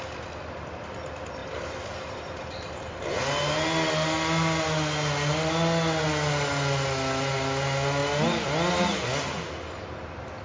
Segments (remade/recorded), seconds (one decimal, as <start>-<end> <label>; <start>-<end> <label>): 0.0-1.4 recorded; 1.4-3.2 remade; 3.2-10.4 recorded